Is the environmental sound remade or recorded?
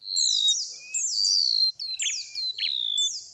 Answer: recorded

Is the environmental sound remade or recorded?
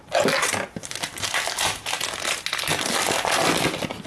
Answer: recorded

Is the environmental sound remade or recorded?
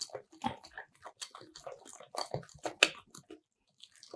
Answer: recorded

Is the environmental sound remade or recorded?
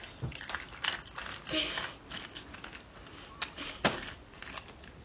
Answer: recorded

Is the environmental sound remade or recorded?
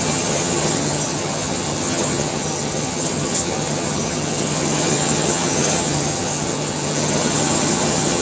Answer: remade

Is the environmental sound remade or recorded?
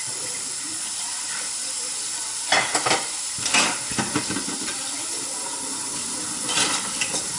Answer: remade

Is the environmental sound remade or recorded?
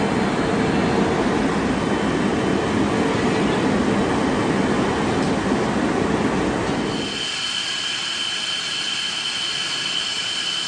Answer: recorded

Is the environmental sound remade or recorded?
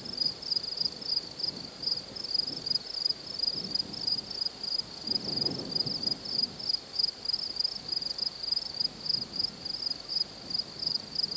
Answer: recorded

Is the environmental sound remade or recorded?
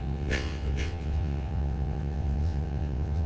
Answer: remade